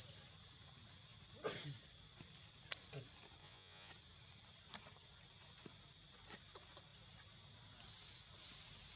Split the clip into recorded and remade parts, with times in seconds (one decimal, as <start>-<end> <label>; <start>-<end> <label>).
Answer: 0.0-3.4 recorded; 3.4-3.9 remade; 3.9-9.0 recorded

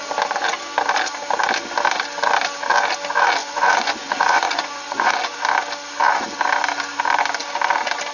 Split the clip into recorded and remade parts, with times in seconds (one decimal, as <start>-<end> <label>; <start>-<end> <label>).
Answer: 0.0-3.4 recorded; 3.4-5.1 remade; 5.1-8.1 recorded

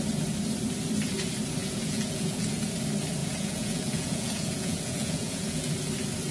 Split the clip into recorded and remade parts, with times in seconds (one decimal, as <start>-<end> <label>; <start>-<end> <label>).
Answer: 0.0-1.6 recorded; 1.6-2.6 remade; 2.6-3.2 recorded; 3.2-5.7 remade; 5.7-6.3 recorded

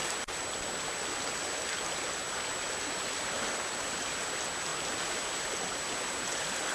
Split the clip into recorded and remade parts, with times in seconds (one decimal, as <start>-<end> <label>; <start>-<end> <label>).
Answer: 0.0-6.7 recorded

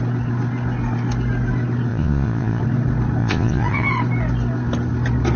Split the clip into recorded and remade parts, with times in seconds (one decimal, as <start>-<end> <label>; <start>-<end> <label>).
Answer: 0.0-1.9 recorded; 1.9-2.6 remade; 2.6-3.2 recorded; 3.2-3.9 remade; 3.9-5.4 recorded

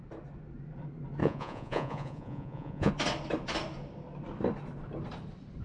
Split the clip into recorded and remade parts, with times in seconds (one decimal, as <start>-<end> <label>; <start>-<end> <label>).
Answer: 0.0-1.2 recorded; 1.2-2.9 remade; 2.9-5.6 recorded

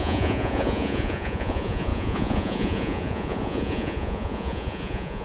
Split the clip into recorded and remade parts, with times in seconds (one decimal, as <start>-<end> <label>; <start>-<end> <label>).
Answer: 0.0-5.2 remade